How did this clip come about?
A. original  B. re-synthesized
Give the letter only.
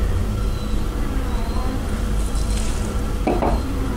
A